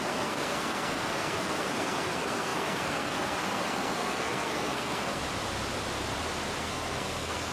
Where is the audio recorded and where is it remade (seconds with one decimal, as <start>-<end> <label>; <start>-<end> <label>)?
0.0-5.2 remade; 5.2-6.6 recorded; 6.6-7.5 remade